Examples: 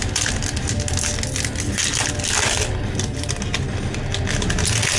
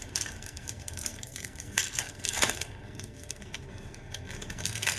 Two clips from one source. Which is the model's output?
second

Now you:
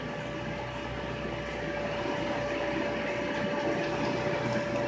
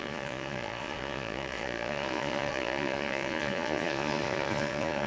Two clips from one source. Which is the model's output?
second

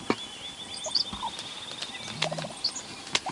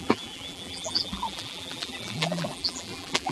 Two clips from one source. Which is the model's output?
second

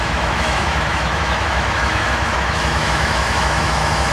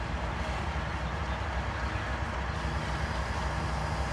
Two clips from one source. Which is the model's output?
first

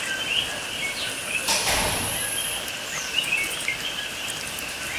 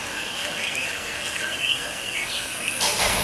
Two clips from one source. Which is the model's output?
second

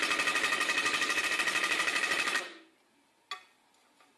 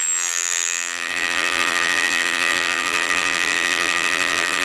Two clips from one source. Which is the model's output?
second